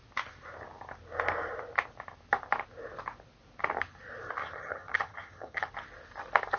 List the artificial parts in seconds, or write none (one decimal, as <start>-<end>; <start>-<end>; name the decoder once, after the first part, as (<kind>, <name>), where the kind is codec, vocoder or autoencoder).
4.4-5.7 (vocoder, HiFi-GAN)